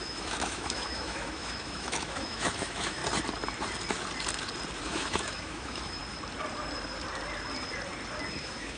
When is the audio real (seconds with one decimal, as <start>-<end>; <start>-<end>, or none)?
3.0-4.8; 6.0-8.4